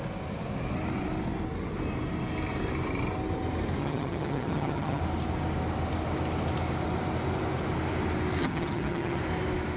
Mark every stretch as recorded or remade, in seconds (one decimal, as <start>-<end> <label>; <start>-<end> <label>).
0.0-3.8 recorded; 3.8-5.0 remade; 5.0-8.4 recorded; 8.4-9.2 remade; 9.2-9.8 recorded